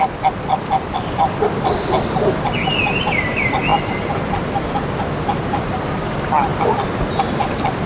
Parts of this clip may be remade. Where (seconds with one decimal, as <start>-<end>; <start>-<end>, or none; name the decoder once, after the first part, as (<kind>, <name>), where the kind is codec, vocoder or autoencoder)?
none